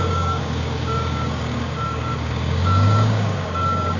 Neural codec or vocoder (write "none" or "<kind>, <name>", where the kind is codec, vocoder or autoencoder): codec, DAC